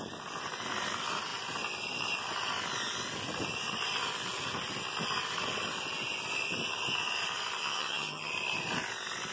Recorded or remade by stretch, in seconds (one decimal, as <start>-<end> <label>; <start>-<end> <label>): 0.0-7.6 recorded; 7.6-8.3 remade; 8.3-9.3 recorded